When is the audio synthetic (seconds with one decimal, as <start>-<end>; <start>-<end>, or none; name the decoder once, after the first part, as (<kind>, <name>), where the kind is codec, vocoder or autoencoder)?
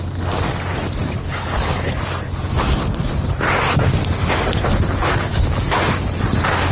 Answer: 1.2-1.9 (codec, HILCodec)